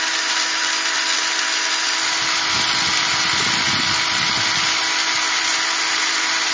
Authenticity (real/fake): real